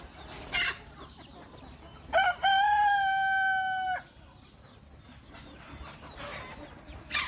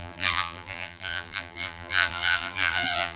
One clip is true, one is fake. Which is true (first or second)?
first